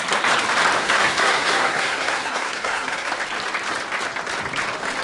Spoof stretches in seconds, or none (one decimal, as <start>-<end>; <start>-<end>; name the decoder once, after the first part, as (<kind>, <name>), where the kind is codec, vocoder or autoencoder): 0.8-3.1 (codec, SNAC)